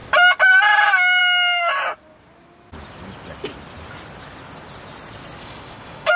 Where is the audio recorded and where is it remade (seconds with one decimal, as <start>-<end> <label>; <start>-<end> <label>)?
0.0-1.2 recorded; 1.2-1.7 remade; 1.7-5.4 recorded; 5.4-6.2 remade